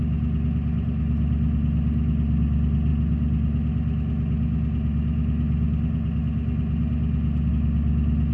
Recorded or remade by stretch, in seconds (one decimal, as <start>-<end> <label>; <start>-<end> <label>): 0.0-8.3 recorded